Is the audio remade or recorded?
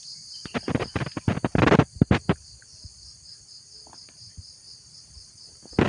recorded